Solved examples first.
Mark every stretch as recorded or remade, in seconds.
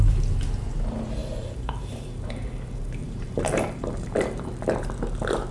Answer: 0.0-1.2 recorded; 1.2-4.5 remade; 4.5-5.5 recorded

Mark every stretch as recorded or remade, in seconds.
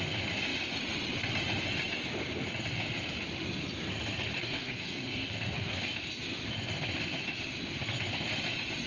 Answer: 0.0-4.4 recorded; 4.4-5.8 remade; 5.8-8.9 recorded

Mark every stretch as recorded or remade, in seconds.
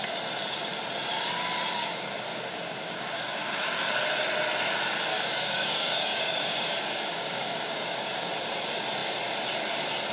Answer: 0.0-2.3 recorded; 2.3-3.6 remade; 3.6-5.1 recorded; 5.1-8.3 remade; 8.3-10.1 recorded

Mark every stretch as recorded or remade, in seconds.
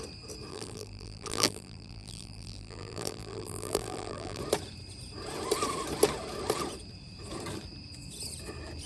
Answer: 0.0-0.5 recorded; 0.5-4.4 remade; 4.4-8.9 recorded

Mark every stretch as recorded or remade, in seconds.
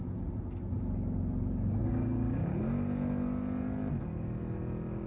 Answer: 0.0-1.8 recorded; 1.8-2.6 remade; 2.6-5.1 recorded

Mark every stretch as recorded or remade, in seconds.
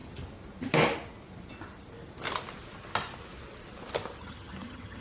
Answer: 0.0-4.2 recorded; 4.2-5.0 remade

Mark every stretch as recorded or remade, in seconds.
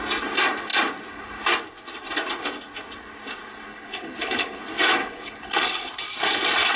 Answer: 0.0-3.7 recorded; 3.7-4.6 remade; 4.6-5.0 recorded; 5.0-5.9 remade; 5.9-6.8 recorded